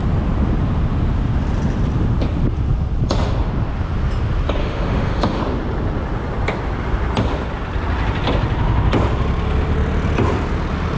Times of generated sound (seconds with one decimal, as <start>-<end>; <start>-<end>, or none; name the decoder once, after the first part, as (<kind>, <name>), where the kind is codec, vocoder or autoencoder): 4.6-5.4 (autoencoder, DAC-VAE)